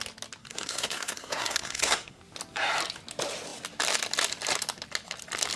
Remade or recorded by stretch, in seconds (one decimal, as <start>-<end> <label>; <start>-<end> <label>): 0.0-0.4 recorded; 0.4-2.2 remade; 2.2-5.6 recorded